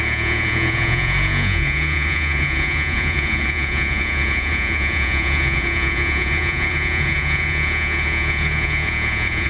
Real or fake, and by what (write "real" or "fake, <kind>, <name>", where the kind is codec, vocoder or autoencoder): fake, vocoder, Vocos